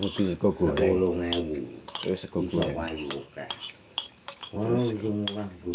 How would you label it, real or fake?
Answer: fake